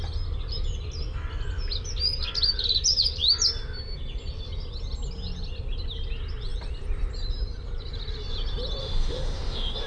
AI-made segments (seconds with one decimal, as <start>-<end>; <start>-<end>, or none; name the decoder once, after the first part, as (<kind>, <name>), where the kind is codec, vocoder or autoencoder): 8.8-9.9 (autoencoder, DAC-VAE)